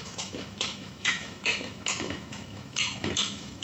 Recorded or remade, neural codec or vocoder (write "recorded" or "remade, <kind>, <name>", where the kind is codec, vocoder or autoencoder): remade, autoencoder, DAC-VAE